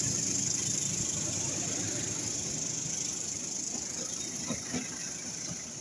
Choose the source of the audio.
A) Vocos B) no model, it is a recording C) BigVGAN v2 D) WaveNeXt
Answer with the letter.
C